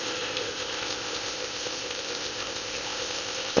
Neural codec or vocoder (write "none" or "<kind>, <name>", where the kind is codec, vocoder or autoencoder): codec, ZipCodec